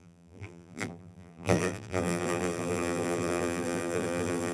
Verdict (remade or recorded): remade